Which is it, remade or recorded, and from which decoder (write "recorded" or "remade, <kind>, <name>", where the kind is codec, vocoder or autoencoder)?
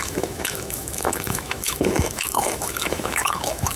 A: remade, autoencoder, DAC-VAE